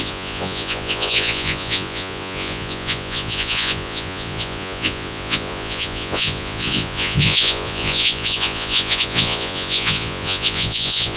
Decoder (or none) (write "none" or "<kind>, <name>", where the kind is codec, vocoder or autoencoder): vocoder, Vocos